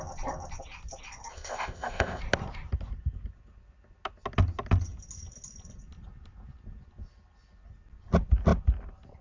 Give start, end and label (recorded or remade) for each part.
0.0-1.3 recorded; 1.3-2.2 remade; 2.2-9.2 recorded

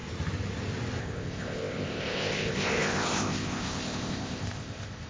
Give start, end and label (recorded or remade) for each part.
0.0-1.0 recorded; 1.0-5.1 remade

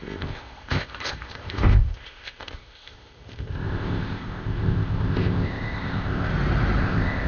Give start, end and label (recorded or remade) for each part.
0.0-6.3 remade; 6.3-6.8 recorded; 6.8-7.3 remade

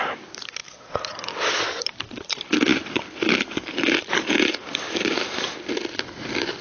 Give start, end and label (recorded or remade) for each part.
0.0-6.6 recorded

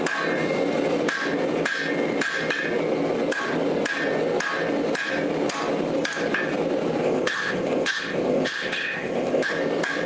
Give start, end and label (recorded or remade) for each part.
0.0-7.0 recorded; 7.0-9.5 remade; 9.5-10.1 recorded